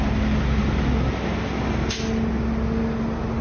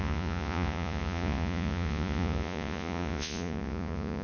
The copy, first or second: second